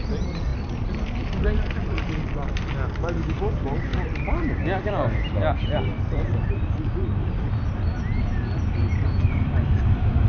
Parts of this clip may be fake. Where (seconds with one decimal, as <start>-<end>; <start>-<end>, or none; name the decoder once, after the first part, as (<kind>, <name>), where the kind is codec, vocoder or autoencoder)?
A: 0.5-1.8 (vocoder, BigVGAN v2); 3.9-5.4